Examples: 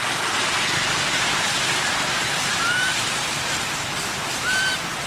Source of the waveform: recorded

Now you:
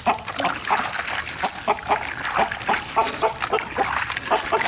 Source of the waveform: recorded